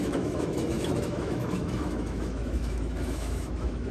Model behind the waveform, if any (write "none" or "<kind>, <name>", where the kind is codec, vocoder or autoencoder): autoencoder, DAC-VAE